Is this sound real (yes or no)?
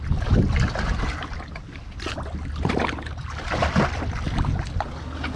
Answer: yes